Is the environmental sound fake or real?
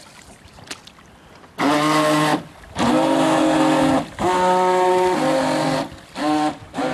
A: real